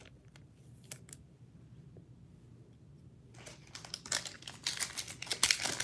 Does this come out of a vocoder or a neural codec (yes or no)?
no